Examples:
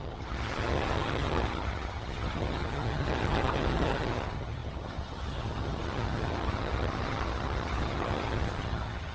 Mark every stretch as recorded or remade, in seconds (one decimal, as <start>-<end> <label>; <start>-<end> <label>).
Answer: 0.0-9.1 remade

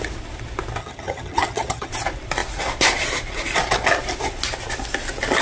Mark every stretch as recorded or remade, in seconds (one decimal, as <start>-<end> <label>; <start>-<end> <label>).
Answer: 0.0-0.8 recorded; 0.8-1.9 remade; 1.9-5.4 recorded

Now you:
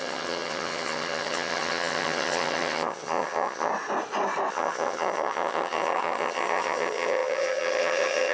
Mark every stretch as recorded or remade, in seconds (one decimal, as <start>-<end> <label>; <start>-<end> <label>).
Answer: 0.0-3.7 remade; 3.7-4.5 recorded; 4.5-8.3 remade

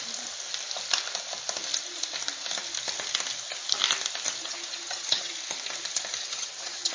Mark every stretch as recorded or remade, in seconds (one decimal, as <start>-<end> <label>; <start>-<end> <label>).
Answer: 0.0-4.4 recorded; 4.4-5.3 remade; 5.3-6.2 recorded; 6.2-6.9 remade

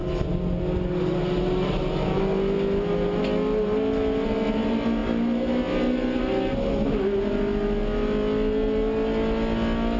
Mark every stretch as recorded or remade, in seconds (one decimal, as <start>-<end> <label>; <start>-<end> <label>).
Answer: 0.0-10.0 recorded

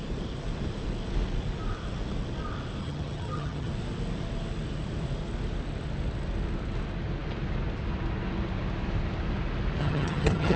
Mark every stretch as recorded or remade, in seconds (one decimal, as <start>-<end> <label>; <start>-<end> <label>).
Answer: 0.0-2.8 recorded; 2.8-3.7 remade; 3.7-9.8 recorded; 9.8-10.6 remade

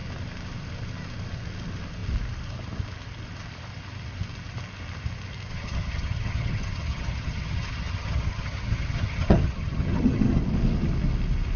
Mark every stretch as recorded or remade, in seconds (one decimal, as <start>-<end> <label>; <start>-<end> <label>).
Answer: 0.0-5.5 recorded; 5.5-10.4 remade; 10.4-11.6 recorded